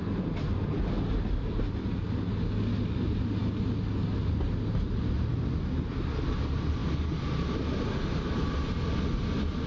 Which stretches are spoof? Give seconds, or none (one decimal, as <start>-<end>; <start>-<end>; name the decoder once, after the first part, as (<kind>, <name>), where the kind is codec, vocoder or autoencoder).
none